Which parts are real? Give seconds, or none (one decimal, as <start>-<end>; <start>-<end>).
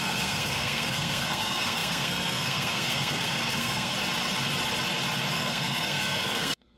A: 3.9-5.3